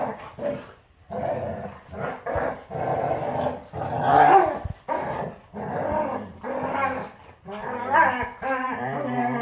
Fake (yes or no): yes